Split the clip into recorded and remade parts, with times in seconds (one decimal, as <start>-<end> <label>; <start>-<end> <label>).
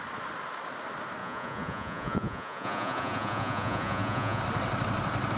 0.0-1.2 recorded; 1.2-4.4 remade; 4.4-5.4 recorded